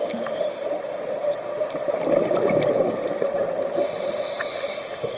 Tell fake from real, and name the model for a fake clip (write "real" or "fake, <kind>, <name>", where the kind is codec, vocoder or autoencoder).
real